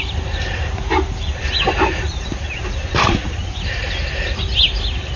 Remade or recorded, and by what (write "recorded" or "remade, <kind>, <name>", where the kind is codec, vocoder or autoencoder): recorded